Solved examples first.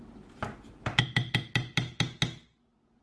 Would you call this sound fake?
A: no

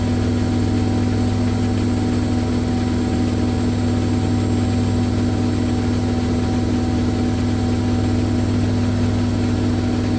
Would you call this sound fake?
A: no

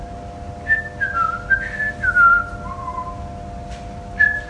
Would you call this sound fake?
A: no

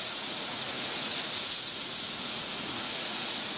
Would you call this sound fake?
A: yes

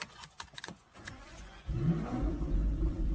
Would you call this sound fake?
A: yes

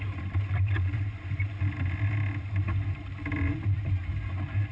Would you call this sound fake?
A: no